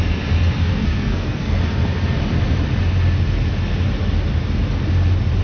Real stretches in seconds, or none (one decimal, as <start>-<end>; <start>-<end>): 0.0-0.6; 1.6-5.4